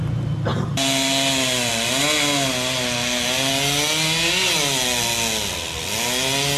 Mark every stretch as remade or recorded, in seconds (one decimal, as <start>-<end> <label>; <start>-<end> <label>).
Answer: 0.0-6.6 recorded